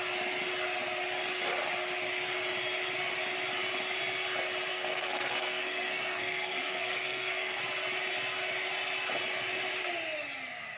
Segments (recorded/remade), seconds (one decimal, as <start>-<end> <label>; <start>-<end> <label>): 0.0-4.7 recorded; 4.7-7.6 remade; 7.6-10.8 recorded